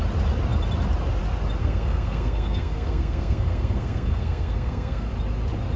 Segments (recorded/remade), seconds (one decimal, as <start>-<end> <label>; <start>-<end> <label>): 0.0-1.6 recorded; 1.6-5.1 remade; 5.1-5.8 recorded